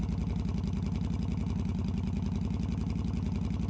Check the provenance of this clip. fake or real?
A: real